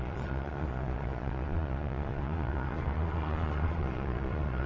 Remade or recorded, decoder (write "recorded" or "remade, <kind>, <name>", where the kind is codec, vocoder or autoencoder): remade, vocoder, Vocos